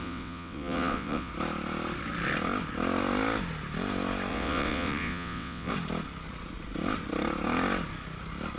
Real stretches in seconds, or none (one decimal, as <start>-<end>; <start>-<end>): 1.3-4.3; 5.7-8.6